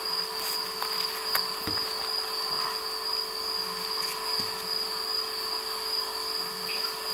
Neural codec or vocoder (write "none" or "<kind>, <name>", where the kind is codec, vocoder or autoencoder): none